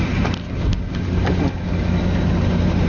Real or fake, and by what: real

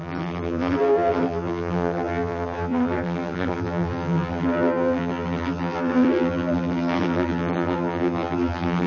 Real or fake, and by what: fake, vocoder, BigVGAN v2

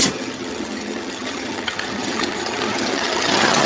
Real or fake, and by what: fake, vocoder, HiFi-GAN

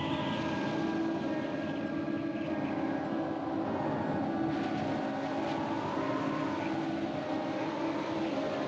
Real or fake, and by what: real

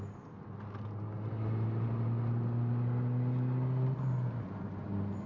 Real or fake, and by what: real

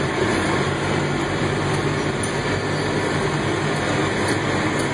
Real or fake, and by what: real